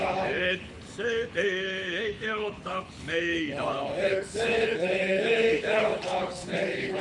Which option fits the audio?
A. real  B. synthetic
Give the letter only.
B